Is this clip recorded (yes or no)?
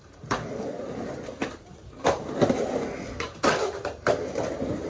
yes